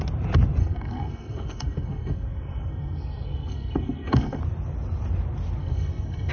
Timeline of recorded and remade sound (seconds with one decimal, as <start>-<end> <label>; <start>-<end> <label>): 0.0-0.6 recorded; 0.6-4.4 remade; 4.4-5.6 recorded; 5.6-6.3 remade